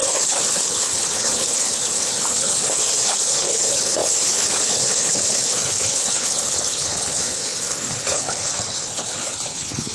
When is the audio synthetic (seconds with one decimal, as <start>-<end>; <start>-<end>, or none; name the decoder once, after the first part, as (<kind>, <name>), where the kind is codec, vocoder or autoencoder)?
0.0-9.9 (codec, HILCodec)